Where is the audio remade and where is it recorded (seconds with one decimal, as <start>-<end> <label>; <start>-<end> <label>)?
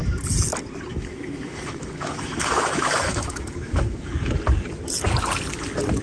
0.0-0.9 recorded; 0.9-4.3 remade; 4.3-6.0 recorded